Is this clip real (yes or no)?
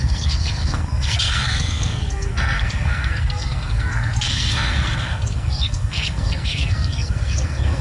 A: no